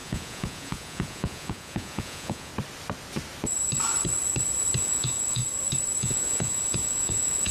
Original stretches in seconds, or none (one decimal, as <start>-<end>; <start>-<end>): 2.5-4.8; 5.4-6.0